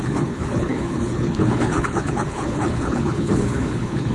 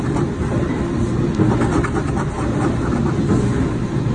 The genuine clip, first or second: second